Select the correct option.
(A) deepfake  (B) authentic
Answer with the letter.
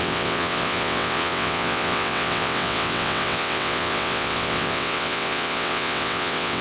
A